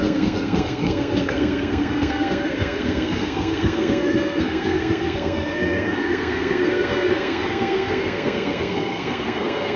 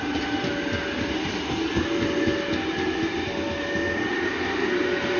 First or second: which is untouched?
second